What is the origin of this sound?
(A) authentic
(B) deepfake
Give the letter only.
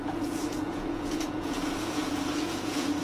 B